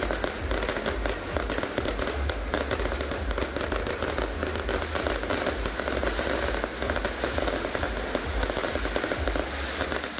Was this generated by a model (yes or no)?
no